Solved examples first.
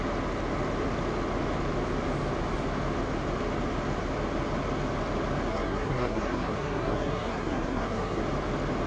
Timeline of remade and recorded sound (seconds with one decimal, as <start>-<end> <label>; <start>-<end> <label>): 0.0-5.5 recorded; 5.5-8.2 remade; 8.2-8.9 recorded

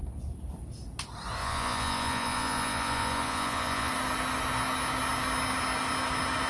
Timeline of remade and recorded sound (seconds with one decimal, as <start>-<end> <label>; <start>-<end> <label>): 0.0-1.4 recorded; 1.4-3.9 remade; 3.9-6.5 recorded

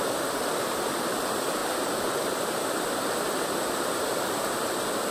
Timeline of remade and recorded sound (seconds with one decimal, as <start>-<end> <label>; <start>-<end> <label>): 0.0-1.6 recorded; 1.6-4.3 remade; 4.3-5.1 recorded

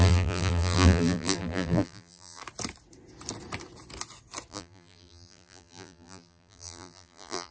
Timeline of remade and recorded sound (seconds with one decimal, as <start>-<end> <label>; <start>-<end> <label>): 0.0-2.4 remade; 2.4-4.5 recorded; 4.5-7.5 remade

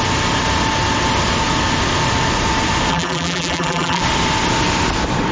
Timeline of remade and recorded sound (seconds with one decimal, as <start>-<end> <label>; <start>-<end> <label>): 0.0-2.9 recorded; 2.9-4.0 remade; 4.0-5.3 recorded